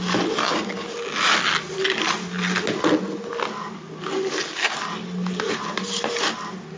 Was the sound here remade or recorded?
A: recorded